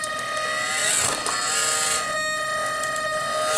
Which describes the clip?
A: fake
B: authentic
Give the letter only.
B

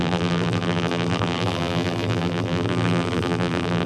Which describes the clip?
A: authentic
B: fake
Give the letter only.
B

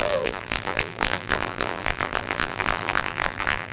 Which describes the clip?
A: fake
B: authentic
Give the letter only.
A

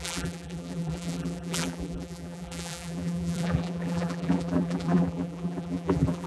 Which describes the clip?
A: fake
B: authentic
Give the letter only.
A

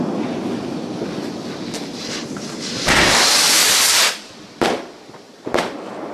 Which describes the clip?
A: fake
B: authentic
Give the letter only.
A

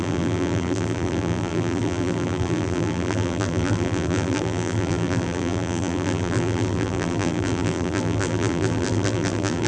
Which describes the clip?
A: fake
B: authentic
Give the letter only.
A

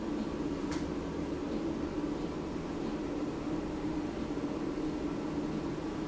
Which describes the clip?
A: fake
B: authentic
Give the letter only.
B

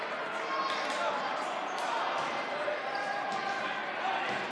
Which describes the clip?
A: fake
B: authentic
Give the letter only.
B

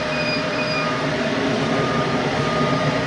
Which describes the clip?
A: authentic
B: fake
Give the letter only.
B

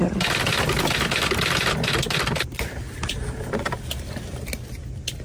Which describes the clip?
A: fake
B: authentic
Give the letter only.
B